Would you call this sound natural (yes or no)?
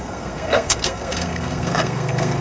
no